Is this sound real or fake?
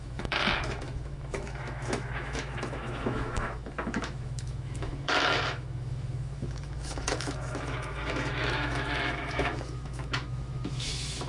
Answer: fake